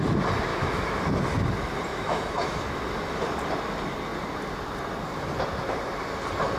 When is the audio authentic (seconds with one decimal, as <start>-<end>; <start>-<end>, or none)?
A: 0.0-0.5; 1.0-1.9; 2.8-6.6